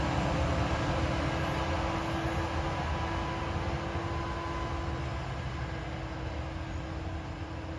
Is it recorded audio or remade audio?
recorded